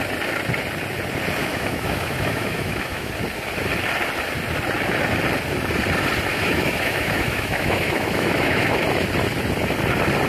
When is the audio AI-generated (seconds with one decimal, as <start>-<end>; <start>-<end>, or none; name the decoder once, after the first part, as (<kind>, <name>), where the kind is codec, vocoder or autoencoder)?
1.4-3.1 (autoencoder, DAC-VAE); 6.3-8.8